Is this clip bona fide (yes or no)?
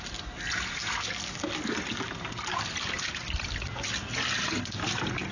yes